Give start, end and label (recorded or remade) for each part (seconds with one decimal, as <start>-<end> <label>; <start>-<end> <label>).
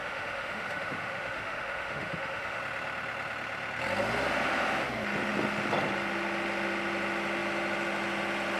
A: 0.0-2.6 remade; 2.6-8.6 recorded